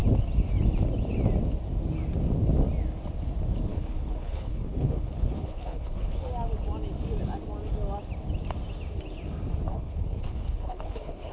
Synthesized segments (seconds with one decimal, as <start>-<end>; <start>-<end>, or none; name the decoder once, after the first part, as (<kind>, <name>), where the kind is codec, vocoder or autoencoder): 3.7-6.3 (codec, HILCodec); 9.7-11.3